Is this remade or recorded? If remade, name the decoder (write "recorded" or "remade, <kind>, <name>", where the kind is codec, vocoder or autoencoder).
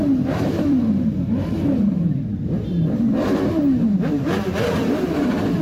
remade, vocoder, BigVGAN v2